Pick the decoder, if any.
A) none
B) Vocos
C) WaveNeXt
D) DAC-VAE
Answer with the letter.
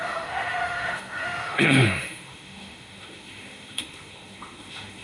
D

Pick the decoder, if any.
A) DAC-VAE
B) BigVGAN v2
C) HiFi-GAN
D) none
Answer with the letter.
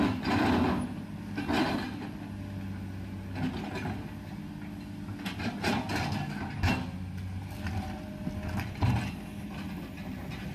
D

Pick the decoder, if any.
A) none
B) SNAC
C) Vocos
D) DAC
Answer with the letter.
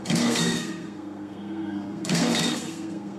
B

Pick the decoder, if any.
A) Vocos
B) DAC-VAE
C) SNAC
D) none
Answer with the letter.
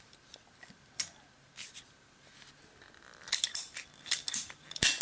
D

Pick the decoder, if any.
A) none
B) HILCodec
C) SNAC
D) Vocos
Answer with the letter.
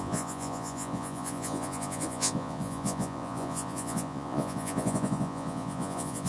D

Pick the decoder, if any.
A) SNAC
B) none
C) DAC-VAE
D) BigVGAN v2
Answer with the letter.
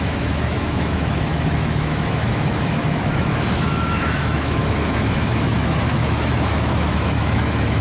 C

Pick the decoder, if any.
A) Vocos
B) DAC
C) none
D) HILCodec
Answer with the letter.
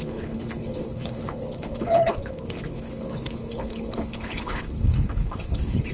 D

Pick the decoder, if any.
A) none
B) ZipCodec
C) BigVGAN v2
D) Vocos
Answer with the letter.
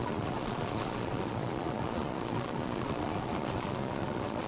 D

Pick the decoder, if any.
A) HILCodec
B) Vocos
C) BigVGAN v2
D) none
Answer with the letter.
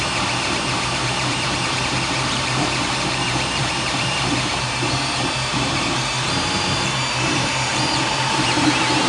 C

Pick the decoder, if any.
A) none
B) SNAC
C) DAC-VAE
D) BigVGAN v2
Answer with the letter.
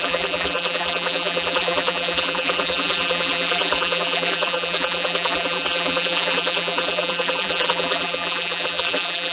D